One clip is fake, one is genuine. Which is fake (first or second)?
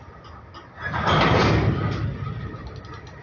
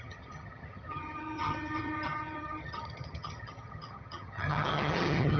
second